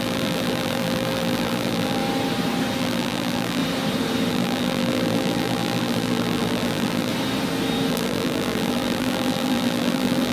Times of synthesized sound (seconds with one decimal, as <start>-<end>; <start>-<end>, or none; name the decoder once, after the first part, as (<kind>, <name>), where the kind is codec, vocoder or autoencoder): 0.0-2.0 (vocoder, BigVGAN v2); 2.8-3.6; 4.3-7.1; 7.9-10.3